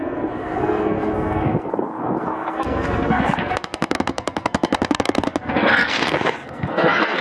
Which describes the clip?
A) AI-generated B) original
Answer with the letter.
A